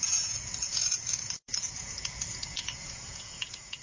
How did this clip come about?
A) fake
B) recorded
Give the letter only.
A